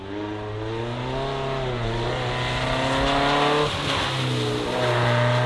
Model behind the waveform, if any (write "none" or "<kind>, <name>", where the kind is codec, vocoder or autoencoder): none